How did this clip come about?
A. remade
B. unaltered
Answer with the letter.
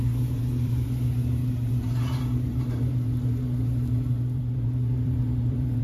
A